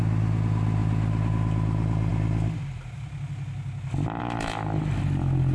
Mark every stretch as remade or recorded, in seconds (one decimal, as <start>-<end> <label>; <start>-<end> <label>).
0.0-5.5 recorded